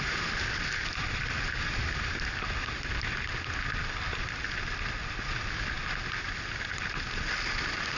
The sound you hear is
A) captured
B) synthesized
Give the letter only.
A